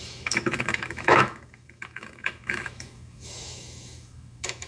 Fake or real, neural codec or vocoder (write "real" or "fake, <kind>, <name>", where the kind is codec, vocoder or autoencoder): fake, autoencoder, DAC-VAE